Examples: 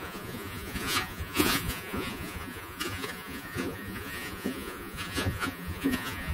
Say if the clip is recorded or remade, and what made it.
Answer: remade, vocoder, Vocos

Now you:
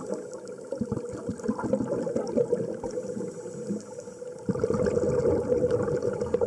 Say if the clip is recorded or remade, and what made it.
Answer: recorded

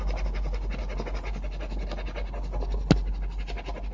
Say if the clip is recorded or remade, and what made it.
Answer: recorded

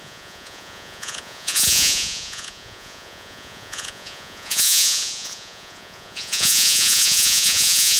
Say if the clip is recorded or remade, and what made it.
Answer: remade, vocoder, Vocos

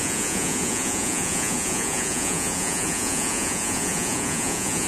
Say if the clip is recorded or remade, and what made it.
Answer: remade, vocoder, Vocos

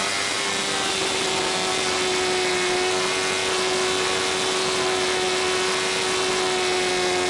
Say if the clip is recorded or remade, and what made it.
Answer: recorded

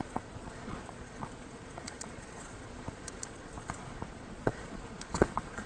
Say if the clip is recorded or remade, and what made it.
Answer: remade, vocoder, Vocos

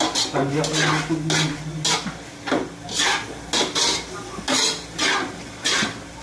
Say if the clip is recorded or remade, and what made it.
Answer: recorded